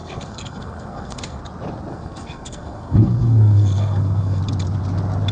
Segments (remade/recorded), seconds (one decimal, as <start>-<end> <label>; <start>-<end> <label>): 0.0-1.4 remade; 1.4-1.9 recorded; 1.9-4.4 remade; 4.4-5.3 recorded